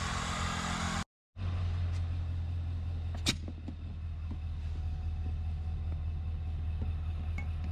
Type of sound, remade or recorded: recorded